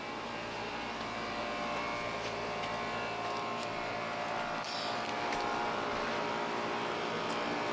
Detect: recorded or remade recorded